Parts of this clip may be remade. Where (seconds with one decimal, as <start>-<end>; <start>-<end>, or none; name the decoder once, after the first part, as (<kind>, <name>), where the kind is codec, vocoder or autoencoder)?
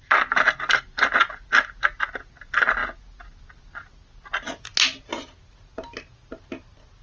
none